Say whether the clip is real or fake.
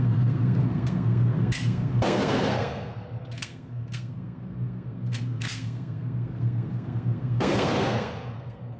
fake